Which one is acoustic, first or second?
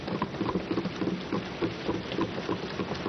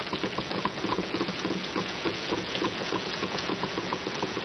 first